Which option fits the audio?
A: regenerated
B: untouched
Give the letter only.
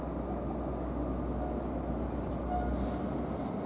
B